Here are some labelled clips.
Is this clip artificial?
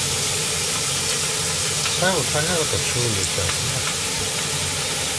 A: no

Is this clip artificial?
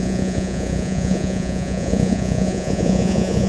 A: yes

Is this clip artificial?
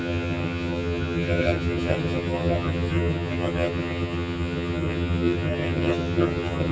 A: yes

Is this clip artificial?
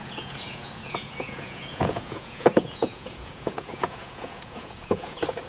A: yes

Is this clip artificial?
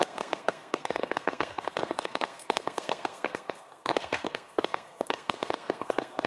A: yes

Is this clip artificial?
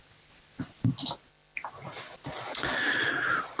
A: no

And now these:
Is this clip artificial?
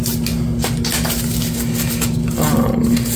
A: no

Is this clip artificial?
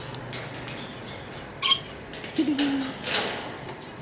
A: no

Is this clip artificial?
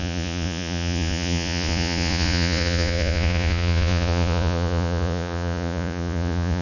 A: yes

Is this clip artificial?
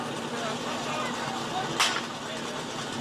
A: no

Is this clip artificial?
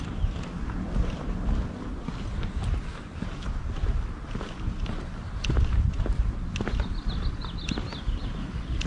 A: no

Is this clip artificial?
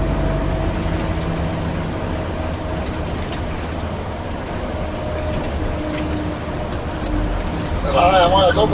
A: no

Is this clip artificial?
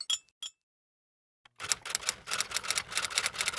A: no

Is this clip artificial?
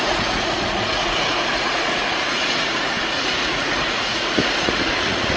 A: yes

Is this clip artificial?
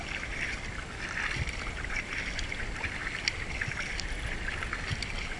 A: no